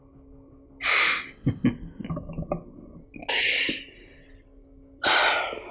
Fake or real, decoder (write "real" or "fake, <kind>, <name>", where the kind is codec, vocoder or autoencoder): real